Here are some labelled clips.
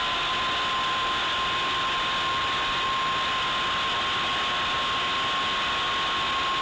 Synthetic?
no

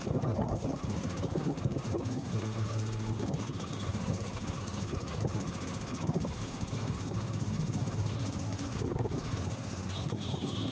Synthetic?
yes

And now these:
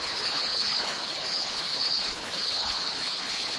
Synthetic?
yes